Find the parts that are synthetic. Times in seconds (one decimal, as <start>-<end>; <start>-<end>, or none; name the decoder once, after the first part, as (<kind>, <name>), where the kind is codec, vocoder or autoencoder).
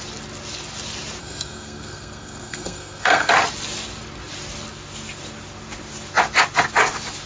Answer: 1.2-3.3 (codec, SNAC)